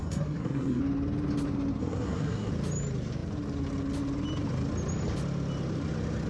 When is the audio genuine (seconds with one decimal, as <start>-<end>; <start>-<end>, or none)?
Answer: 0.8-1.8; 2.5-6.3